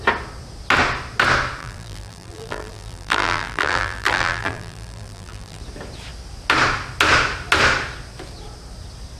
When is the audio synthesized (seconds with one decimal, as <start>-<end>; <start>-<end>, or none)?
1.6-5.6

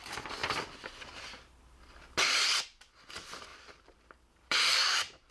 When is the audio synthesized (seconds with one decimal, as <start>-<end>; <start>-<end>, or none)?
3.5-5.3

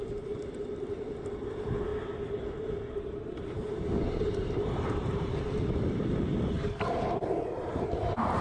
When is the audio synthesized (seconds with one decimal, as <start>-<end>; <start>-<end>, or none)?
0.0-1.9; 3.0-6.3; 7.6-8.4

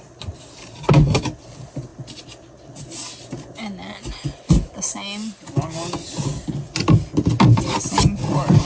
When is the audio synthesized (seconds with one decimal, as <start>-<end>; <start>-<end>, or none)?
7.5-8.6